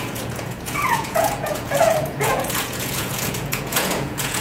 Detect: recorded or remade remade